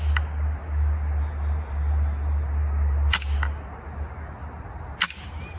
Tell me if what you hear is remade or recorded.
recorded